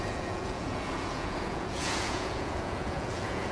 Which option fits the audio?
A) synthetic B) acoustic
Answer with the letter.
A